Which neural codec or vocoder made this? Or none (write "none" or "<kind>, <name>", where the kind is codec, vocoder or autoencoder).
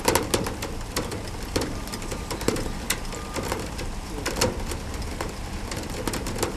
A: none